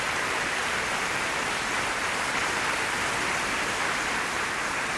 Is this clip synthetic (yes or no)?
no